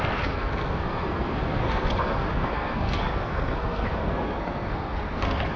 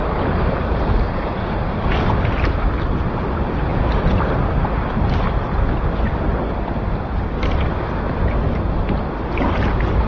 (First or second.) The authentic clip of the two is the second